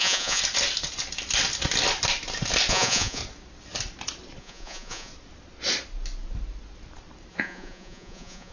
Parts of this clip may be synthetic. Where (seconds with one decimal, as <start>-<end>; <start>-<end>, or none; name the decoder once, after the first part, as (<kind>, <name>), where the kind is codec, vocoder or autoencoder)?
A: 0.0-0.4 (vocoder, Vocos); 2.7-3.2; 4.4-5.1; 7.3-8.5